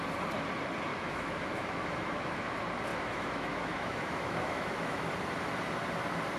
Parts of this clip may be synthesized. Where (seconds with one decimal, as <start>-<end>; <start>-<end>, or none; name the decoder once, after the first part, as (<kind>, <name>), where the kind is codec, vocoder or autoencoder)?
0.9-2.5 (autoencoder, DAC-VAE); 2.9-5.1